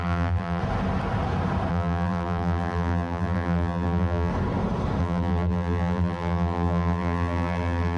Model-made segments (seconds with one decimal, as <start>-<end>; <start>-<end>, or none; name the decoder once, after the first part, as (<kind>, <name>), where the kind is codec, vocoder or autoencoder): 0.0-0.6 (vocoder, BigVGAN v2); 1.7-4.3; 5.0-8.0